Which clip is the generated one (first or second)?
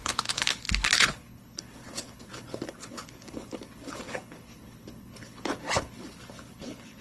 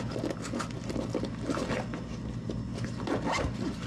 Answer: first